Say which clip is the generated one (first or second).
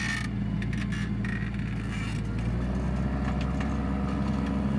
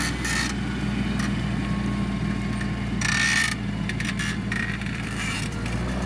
second